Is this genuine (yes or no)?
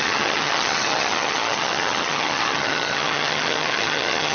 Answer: no